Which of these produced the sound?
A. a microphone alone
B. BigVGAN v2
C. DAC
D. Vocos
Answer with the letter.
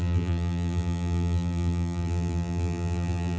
B